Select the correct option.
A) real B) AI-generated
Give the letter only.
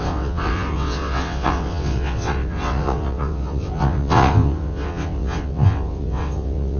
B